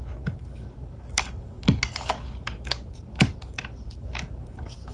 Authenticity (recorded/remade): remade